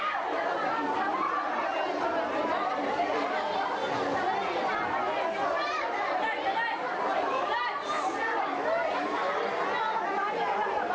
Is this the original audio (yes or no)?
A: yes